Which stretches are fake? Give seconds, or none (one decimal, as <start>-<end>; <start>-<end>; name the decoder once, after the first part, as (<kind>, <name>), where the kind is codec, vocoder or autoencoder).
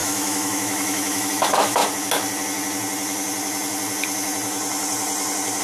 0.0-1.8 (autoencoder, DAC-VAE)